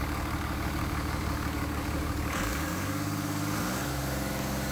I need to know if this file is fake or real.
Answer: fake